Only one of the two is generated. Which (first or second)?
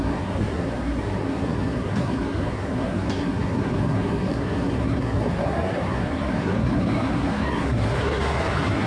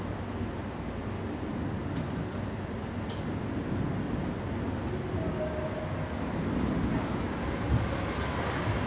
first